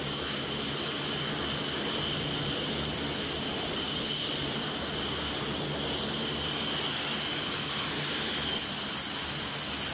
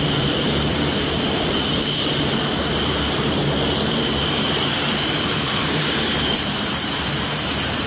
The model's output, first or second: second